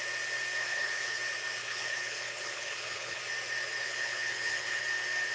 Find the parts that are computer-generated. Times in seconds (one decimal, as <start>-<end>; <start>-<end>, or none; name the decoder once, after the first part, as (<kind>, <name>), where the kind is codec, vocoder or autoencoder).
0.6-1.2 (codec, HILCodec); 1.6-3.2; 3.8-4.8